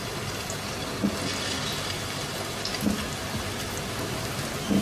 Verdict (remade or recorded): recorded